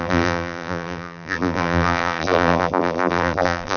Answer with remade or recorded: remade